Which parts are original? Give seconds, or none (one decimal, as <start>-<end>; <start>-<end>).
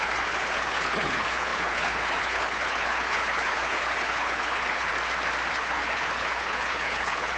4.9-5.5